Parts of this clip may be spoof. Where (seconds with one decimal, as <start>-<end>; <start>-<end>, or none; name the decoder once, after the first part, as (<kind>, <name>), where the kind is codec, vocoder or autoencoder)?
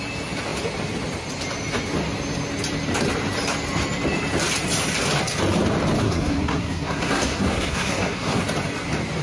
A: 6.0-8.4 (codec, SNAC)